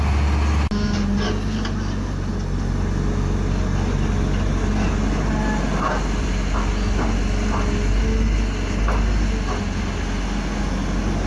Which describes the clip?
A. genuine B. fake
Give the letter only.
A